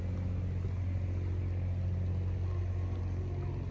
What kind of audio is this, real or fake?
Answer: real